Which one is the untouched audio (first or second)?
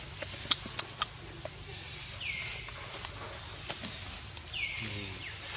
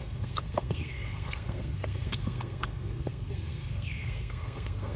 first